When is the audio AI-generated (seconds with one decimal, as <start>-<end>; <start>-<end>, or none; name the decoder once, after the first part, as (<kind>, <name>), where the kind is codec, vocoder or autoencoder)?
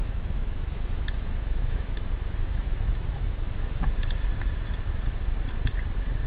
0.0-3.8 (autoencoder, DAC-VAE)